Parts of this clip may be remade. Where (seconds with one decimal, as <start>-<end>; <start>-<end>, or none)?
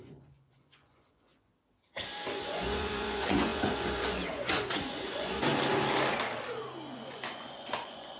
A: 0.0-1.5; 2.3-5.5; 6.9-8.2